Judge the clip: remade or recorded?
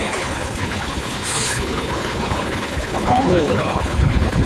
remade